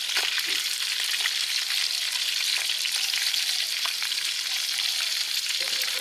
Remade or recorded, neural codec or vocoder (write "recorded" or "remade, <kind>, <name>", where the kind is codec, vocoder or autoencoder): remade, vocoder, BigVGAN v2